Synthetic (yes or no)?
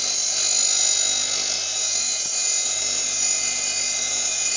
no